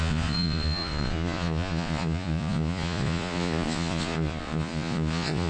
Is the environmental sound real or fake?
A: fake